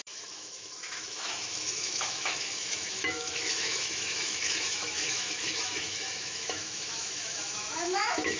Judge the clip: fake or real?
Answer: fake